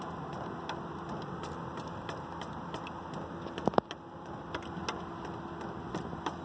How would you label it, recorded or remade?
recorded